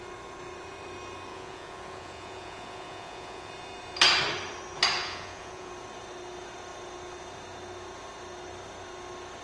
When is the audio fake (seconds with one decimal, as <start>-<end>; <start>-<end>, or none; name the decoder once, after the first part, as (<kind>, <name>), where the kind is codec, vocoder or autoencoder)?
1.3-3.5 (vocoder, Vocos); 5.0-5.7